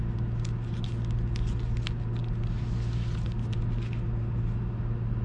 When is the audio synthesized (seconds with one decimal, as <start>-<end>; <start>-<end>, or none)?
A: none